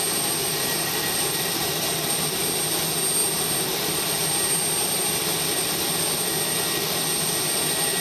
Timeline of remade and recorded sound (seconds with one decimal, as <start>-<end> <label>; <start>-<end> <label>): 0.0-8.0 recorded